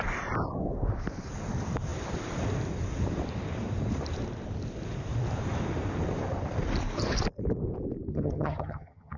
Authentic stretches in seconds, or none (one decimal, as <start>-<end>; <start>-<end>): 0.0-8.1